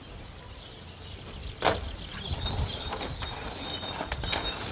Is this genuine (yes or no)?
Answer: no